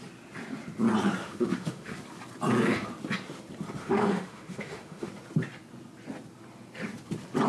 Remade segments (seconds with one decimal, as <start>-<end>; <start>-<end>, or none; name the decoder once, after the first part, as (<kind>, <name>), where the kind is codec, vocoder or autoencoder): 1.2-1.9 (autoencoder, DAC-VAE); 3.8-5.1